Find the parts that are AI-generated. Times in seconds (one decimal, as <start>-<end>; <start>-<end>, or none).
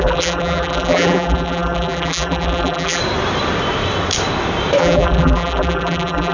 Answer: 0.0-3.0; 4.8-6.3